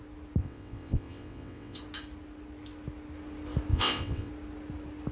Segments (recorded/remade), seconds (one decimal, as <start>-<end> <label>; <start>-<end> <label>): 0.0-0.4 recorded; 0.4-1.8 remade; 1.8-3.7 recorded; 3.7-4.3 remade; 4.3-5.1 recorded